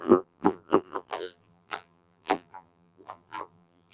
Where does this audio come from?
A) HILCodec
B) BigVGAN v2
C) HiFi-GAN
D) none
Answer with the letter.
B